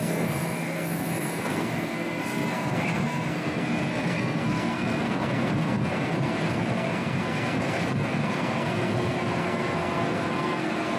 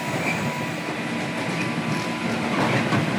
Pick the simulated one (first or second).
first